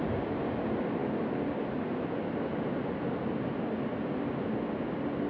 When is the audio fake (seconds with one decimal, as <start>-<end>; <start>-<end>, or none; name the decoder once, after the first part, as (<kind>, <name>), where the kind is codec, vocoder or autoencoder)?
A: none